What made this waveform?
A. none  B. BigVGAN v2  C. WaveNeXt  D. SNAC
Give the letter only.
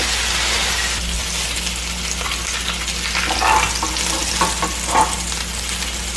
A